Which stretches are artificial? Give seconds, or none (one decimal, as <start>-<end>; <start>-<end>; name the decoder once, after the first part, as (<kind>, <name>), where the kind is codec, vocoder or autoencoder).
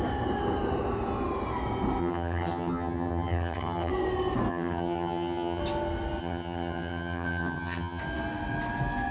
2.0-3.9 (vocoder, HiFi-GAN); 4.5-5.6; 6.2-8.0